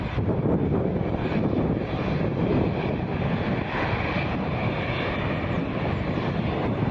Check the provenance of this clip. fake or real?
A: real